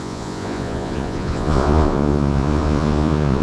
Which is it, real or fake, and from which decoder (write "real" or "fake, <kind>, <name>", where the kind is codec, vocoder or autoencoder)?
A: fake, vocoder, Vocos